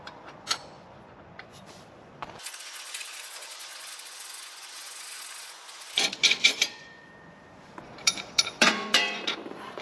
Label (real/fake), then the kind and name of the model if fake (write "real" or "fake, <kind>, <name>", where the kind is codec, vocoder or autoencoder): fake, vocoder, Vocos